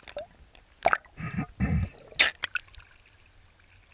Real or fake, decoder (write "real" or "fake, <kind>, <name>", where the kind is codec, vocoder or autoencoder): real